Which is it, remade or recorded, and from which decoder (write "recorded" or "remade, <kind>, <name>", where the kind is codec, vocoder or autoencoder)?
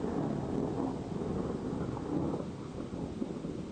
recorded